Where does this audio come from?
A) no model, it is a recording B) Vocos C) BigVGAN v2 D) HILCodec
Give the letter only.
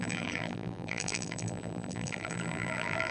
C